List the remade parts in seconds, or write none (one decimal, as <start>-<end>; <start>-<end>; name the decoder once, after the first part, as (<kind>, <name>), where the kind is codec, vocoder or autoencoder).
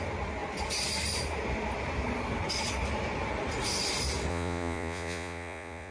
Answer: 4.3-5.9 (vocoder, Vocos)